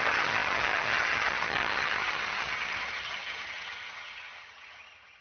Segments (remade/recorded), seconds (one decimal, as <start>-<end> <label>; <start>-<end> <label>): 0.0-5.2 remade